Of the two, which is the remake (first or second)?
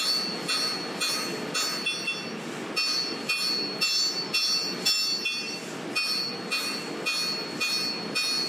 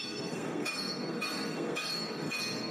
second